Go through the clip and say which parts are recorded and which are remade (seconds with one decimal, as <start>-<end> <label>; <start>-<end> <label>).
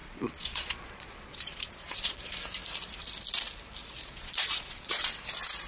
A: 0.0-2.4 remade; 2.4-3.8 recorded; 3.8-5.1 remade; 5.1-5.7 recorded